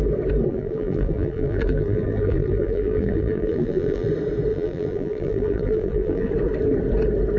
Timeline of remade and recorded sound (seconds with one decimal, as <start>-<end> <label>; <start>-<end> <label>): 0.0-0.5 recorded; 0.5-4.1 remade; 4.1-4.5 recorded; 4.5-6.3 remade; 6.3-7.4 recorded